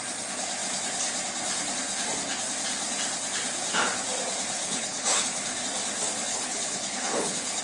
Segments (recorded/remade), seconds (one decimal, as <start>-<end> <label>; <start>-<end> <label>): 0.0-4.6 recorded; 4.6-5.6 remade; 5.6-6.3 recorded; 6.3-7.6 remade

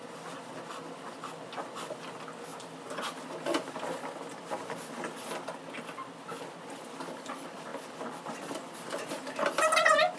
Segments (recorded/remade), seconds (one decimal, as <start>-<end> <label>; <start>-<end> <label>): 0.0-10.2 recorded

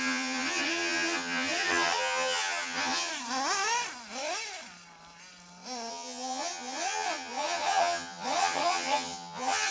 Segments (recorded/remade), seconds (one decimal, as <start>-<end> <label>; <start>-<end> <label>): 0.0-3.1 remade; 3.1-5.9 recorded; 5.9-9.7 remade

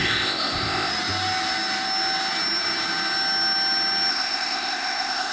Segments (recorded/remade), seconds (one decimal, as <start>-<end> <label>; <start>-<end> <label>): 0.0-0.9 remade; 0.9-4.1 recorded; 4.1-5.3 remade

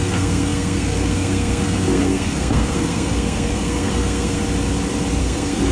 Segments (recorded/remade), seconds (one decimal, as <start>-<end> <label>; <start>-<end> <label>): 0.0-4.4 remade; 4.4-5.2 recorded; 5.2-5.7 remade

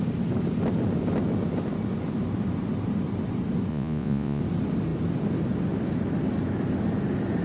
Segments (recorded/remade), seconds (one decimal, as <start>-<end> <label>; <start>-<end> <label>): 0.0-3.7 recorded; 3.7-4.4 remade; 4.4-7.4 recorded

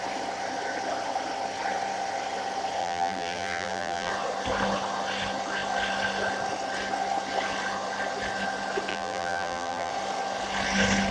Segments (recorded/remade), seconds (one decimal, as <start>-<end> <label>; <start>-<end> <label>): 0.0-2.8 recorded; 2.8-4.1 remade; 4.1-8.9 recorded; 8.9-9.9 remade; 9.9-11.1 recorded